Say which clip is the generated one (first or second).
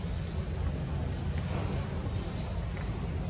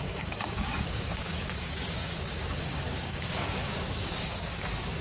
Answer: second